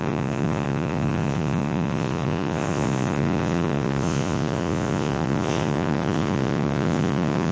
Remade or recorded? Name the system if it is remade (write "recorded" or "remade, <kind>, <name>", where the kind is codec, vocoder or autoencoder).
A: remade, vocoder, Vocos